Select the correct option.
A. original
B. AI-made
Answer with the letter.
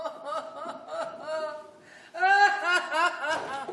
A